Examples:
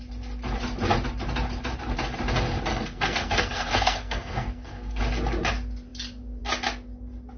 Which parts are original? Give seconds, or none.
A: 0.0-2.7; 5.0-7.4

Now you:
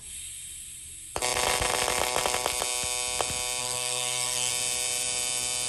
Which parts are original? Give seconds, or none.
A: 0.0-3.6; 4.5-5.7

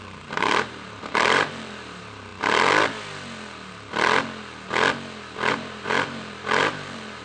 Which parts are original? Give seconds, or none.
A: 2.3-5.5